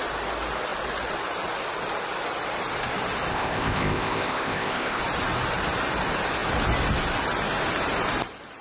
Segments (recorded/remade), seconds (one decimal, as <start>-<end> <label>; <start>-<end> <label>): 0.0-3.3 recorded; 3.3-5.0 remade; 5.0-8.6 recorded